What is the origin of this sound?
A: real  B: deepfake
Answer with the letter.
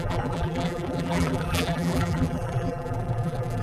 B